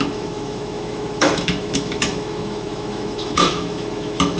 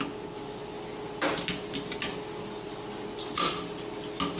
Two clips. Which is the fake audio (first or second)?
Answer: first